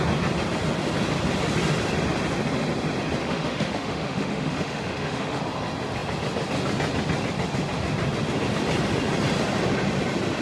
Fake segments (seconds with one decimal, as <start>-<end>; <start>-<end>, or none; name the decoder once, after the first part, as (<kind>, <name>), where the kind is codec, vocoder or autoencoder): 3.2-5.4 (autoencoder, DAC-VAE)